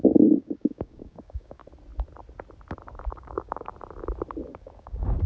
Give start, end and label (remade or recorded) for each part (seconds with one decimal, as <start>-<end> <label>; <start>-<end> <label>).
0.0-1.6 remade; 1.6-3.1 recorded; 3.1-3.7 remade; 3.7-4.5 recorded; 4.5-5.3 remade